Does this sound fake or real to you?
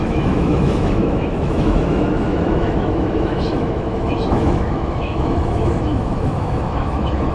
fake